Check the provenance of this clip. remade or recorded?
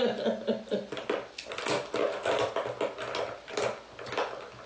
recorded